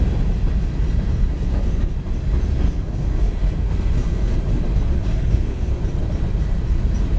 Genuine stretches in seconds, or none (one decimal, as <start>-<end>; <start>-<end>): 0.0-1.1; 1.9-2.6; 4.4-5.0; 5.8-7.2